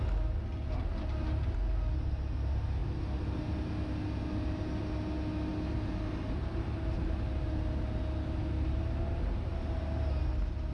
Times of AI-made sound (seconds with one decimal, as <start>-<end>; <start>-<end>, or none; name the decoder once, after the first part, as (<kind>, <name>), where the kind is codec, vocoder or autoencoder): none